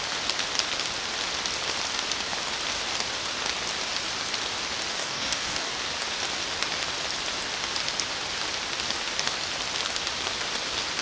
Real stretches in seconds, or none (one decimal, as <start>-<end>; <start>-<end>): 0.0-5.0; 5.7-11.0